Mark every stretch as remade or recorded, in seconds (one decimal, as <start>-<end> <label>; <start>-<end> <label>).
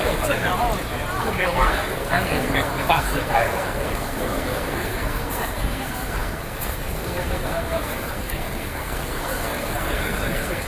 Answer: 0.0-0.5 remade; 0.5-1.2 recorded; 1.2-10.7 remade